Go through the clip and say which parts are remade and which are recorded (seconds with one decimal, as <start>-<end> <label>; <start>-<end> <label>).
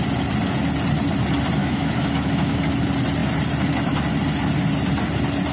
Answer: 0.0-1.6 recorded; 1.6-2.6 remade; 2.6-5.5 recorded